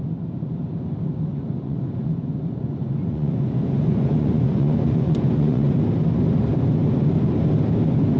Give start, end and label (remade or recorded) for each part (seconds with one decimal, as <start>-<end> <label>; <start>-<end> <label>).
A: 0.0-1.3 recorded; 1.3-5.7 remade; 5.7-8.2 recorded